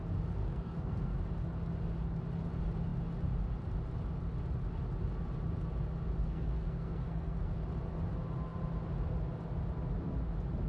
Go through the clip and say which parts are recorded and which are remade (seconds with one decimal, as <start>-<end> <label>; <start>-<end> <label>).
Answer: 0.0-0.4 recorded; 0.4-1.2 remade; 1.2-6.2 recorded; 6.2-7.6 remade; 7.6-10.7 recorded